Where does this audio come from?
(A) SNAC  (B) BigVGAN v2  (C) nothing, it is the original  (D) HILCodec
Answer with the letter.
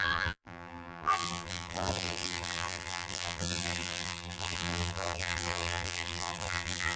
B